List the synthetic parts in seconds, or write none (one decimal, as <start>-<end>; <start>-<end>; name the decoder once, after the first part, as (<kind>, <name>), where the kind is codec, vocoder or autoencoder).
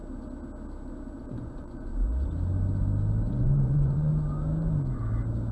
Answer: 1.2-1.9 (vocoder, Vocos); 3.3-4.1